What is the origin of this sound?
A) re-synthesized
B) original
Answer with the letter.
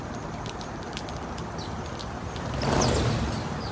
B